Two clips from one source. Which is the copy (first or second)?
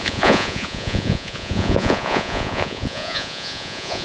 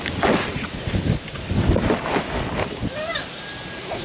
first